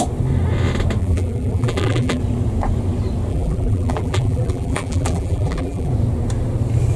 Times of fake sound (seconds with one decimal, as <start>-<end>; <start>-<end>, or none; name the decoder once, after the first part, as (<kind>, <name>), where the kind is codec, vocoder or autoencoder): 1.0-2.2 (vocoder, BigVGAN v2); 3.3-5.9